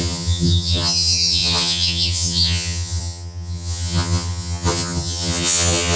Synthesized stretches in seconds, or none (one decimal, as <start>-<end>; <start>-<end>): 0.0-6.0